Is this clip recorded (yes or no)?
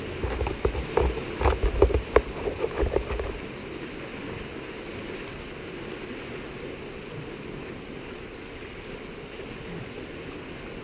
yes